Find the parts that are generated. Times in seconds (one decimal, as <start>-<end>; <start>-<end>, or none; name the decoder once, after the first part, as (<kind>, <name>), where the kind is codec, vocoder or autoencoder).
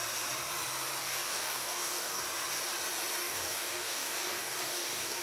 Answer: 1.0-2.2 (codec, DAC); 3.2-5.2